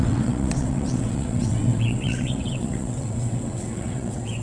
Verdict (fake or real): fake